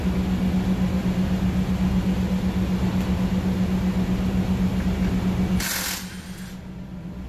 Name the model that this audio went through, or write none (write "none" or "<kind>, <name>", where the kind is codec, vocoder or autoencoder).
none